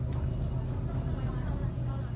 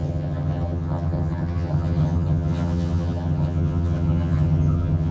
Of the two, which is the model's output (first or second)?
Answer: second